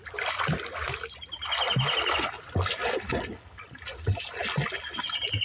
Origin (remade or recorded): recorded